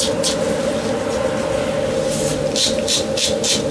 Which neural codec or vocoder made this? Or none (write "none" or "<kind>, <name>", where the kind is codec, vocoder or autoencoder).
none